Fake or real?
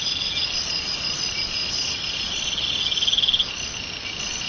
real